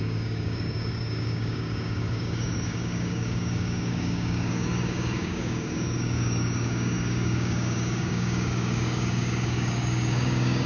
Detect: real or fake fake